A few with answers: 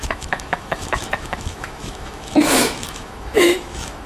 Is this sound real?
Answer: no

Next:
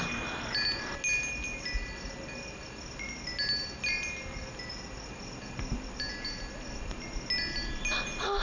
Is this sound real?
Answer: yes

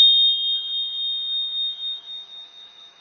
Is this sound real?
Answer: no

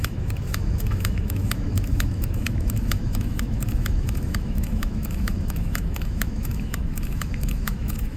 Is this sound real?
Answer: no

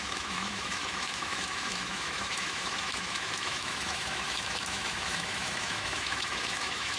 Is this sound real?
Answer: no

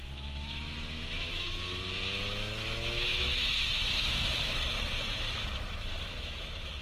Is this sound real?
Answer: no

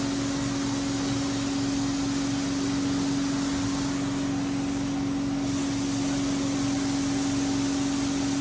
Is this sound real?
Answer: yes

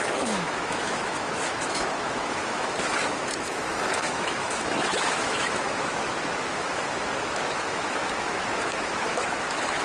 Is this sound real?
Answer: no